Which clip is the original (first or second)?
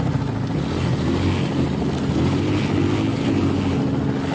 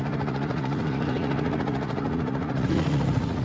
first